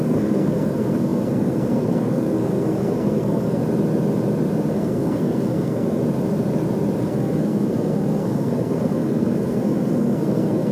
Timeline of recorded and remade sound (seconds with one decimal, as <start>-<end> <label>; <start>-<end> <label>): 0.0-3.6 remade; 3.6-4.7 recorded; 4.7-6.0 remade; 6.0-7.0 recorded; 7.0-10.7 remade